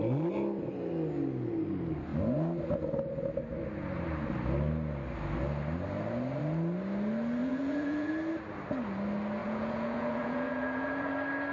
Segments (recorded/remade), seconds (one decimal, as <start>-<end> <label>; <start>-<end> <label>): 0.0-7.4 recorded; 7.4-8.1 remade; 8.1-9.4 recorded; 9.4-11.1 remade; 11.1-11.5 recorded